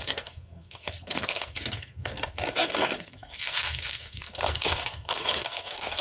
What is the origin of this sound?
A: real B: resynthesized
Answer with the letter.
B